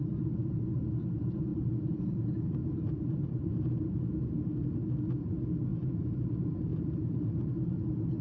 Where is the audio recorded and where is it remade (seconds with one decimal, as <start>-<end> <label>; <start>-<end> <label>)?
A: 0.0-1.5 recorded; 1.5-4.0 remade; 4.0-6.7 recorded; 6.7-7.5 remade; 7.5-8.2 recorded

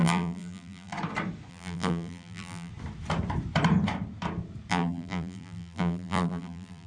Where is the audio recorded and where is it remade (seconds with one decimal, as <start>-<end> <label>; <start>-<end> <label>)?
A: 0.0-0.9 remade; 0.9-1.5 recorded; 1.5-2.7 remade; 2.7-4.7 recorded; 4.7-6.9 remade

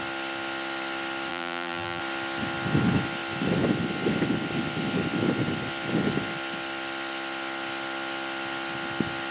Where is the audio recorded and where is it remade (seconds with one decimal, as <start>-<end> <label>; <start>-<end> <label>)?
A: 0.0-1.3 recorded; 1.3-2.0 remade; 2.0-9.3 recorded

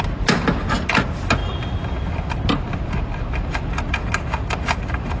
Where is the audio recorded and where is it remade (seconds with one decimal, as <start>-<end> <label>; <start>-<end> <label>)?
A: 0.0-5.2 recorded

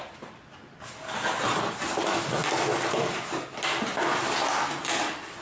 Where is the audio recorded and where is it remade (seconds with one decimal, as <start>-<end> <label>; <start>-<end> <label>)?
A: 0.0-5.4 recorded